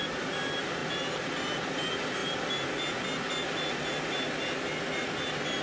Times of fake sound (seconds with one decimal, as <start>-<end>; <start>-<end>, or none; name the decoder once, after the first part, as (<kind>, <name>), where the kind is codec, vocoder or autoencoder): none